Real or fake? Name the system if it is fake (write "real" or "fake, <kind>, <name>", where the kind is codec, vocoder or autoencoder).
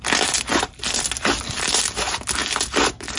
real